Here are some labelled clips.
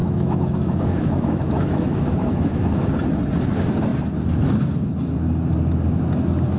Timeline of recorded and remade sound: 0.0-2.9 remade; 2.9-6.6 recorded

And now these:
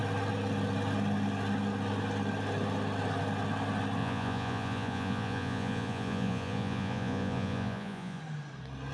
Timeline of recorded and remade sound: 0.0-4.0 recorded; 4.0-8.2 remade; 8.2-8.9 recorded

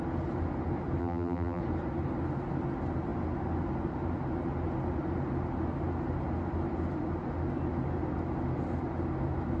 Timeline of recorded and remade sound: 0.0-1.0 recorded; 1.0-1.6 remade; 1.6-9.6 recorded